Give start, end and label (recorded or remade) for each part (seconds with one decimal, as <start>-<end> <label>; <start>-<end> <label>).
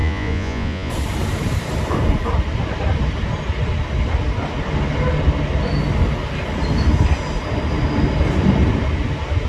0.0-0.9 remade; 0.9-9.5 recorded